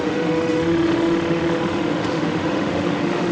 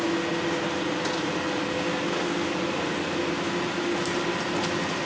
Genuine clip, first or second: second